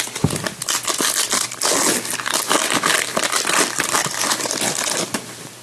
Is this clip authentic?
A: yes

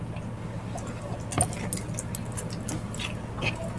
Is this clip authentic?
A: yes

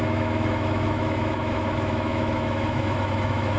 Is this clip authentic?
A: no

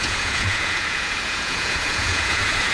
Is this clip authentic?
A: no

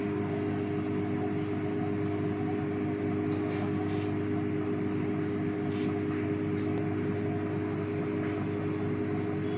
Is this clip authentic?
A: yes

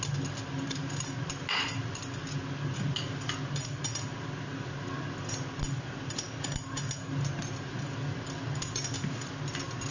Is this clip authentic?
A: yes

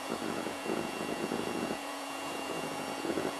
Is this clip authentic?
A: no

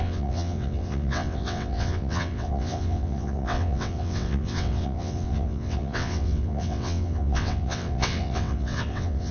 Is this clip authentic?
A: no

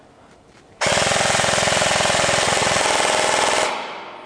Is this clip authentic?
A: yes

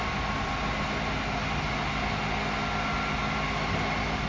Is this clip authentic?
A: yes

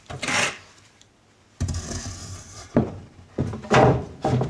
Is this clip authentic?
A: no